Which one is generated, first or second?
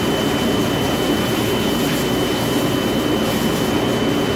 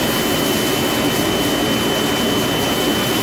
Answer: first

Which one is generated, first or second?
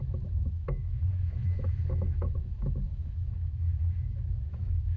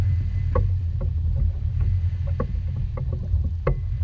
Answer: first